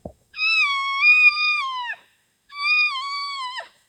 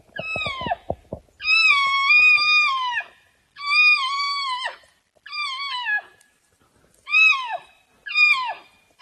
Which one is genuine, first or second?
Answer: second